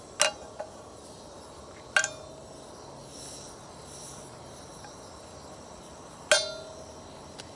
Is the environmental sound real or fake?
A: real